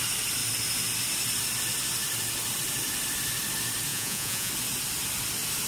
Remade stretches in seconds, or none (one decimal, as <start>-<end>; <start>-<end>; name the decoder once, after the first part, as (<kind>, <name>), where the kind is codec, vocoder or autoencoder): 3.9-4.5 (vocoder, Vocos)